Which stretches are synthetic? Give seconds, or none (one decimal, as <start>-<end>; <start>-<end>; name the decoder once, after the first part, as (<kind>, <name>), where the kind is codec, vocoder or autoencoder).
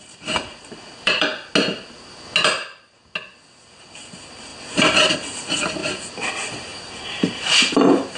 0.0-1.3 (vocoder, BigVGAN v2); 3.8-4.5; 5.1-5.8; 6.3-8.2